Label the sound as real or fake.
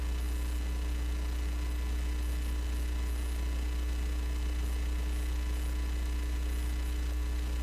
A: real